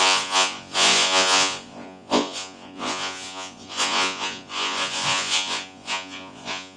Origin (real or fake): fake